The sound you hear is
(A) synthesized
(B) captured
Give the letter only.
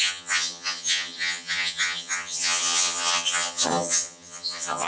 A